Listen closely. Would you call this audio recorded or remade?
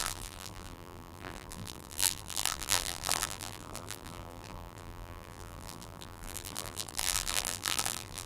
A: remade